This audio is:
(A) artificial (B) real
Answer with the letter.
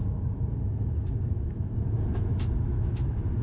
A